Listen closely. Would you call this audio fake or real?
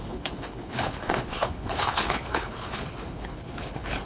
fake